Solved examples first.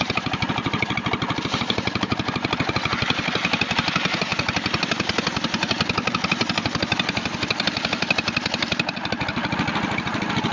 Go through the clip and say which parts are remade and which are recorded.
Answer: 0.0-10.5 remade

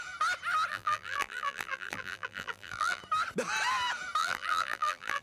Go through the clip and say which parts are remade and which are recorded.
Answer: 0.0-0.7 recorded; 0.7-3.0 remade; 3.0-4.2 recorded; 4.2-5.2 remade

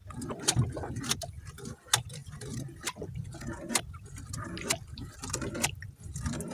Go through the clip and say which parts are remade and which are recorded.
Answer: 0.0-6.5 recorded

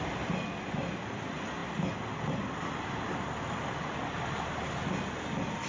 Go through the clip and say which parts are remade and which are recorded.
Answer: 0.0-5.7 recorded